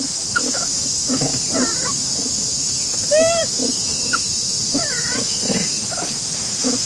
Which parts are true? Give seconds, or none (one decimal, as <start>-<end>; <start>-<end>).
1.3-1.9